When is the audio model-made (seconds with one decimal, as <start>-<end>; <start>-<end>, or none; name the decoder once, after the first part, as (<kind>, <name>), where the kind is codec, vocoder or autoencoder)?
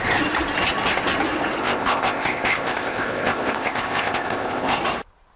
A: 1.6-4.8 (codec, ZipCodec)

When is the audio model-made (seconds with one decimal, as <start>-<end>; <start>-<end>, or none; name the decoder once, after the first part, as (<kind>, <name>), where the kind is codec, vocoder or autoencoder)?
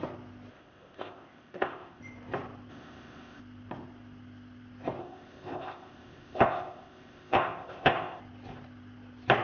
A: 0.5-2.0 (codec, ZipCodec); 2.7-3.4; 5.0-8.2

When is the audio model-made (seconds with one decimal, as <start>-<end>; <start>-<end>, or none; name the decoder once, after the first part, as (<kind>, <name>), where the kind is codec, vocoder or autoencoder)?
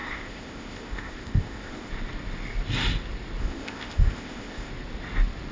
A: 0.0-1.9 (codec, ZipCodec); 3.4-4.7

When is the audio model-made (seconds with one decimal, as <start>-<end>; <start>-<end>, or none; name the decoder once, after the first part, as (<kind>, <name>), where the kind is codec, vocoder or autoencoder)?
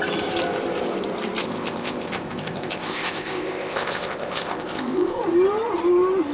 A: 1.4-5.2 (codec, ZipCodec)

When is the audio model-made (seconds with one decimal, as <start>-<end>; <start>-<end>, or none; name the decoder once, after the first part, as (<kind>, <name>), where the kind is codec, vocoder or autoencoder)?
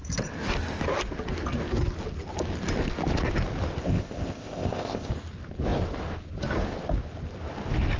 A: 3.8-5.1 (codec, ZipCodec)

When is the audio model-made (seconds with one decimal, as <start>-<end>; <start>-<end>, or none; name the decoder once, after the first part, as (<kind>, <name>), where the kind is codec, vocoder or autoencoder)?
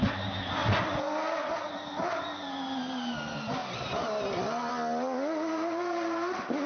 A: none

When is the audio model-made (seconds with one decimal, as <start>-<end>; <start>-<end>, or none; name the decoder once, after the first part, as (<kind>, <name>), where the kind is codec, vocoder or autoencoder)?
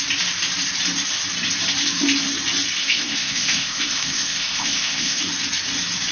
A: 2.8-5.2 (codec, ZipCodec)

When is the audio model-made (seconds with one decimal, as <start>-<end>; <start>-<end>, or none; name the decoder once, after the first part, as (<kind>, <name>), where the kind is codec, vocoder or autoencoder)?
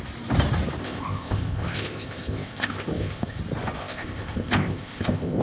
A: 0.8-3.4 (codec, ZipCodec); 3.8-5.4